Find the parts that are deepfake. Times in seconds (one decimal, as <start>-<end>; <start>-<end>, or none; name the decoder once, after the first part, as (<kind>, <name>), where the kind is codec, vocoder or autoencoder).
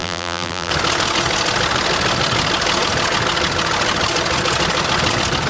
0.0-0.7 (vocoder, BigVGAN v2)